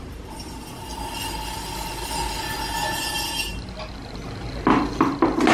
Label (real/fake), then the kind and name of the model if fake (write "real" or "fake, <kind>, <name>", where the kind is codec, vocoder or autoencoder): real